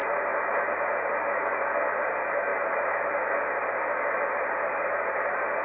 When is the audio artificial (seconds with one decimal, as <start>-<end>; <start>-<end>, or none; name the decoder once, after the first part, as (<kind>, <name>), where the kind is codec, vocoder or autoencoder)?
none